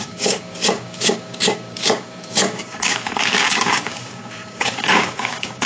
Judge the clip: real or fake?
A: fake